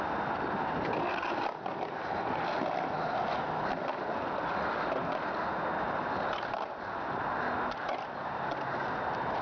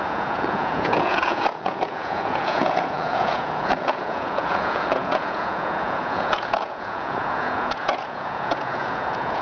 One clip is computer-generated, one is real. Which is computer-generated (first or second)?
second